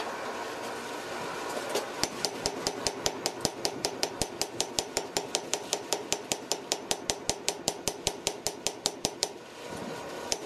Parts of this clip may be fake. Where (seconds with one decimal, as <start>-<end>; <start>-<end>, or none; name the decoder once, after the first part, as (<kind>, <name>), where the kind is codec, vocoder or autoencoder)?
none